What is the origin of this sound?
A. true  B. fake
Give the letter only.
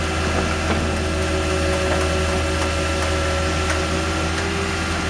A